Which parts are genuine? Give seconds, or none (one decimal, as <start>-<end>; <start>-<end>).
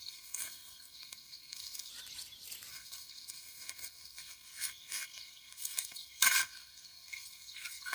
1.9-2.7